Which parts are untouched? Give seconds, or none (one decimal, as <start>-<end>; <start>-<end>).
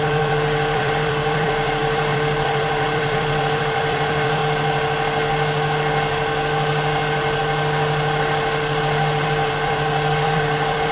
4.4-8.8